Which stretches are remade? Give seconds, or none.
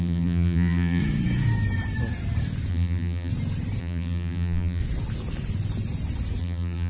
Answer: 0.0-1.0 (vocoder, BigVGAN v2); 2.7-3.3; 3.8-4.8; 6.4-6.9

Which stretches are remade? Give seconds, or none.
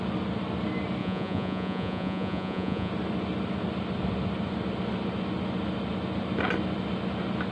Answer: 1.0-2.9 (vocoder, Vocos)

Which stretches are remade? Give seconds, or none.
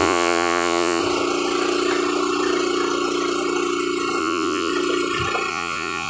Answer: 0.0-1.0 (vocoder, Vocos); 4.2-4.7; 5.5-6.1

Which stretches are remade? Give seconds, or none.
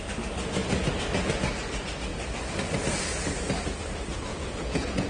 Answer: 4.3-5.1 (vocoder, Vocos)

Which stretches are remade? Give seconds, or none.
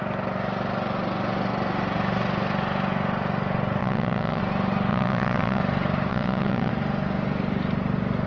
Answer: 3.8-4.4 (vocoder, WaveNeXt); 4.9-5.6; 6.1-6.7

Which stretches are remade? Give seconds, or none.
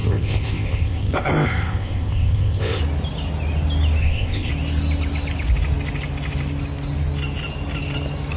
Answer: 0.0-2.8 (codec, ZipCodec); 4.0-4.5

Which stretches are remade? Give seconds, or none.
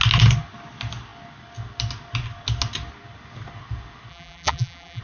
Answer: 4.1-5.0 (vocoder, BigVGAN v2)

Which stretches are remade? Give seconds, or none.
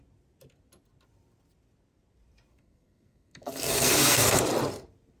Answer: 2.5-4.4 (codec, SNAC)